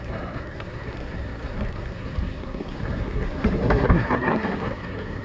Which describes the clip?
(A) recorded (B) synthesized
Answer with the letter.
B